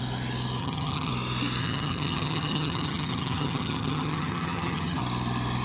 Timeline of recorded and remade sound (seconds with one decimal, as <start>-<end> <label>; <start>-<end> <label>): 0.0-0.6 recorded; 0.6-1.1 remade; 1.1-1.6 recorded; 1.6-5.0 remade; 5.0-5.6 recorded